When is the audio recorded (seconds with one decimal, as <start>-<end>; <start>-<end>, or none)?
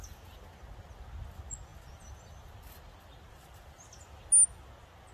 0.0-5.1